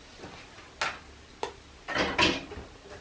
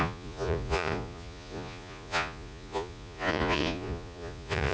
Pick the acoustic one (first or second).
first